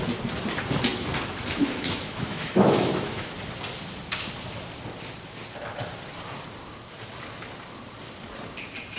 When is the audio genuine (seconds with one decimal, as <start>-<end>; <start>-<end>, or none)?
0.0-1.6; 3.3-9.0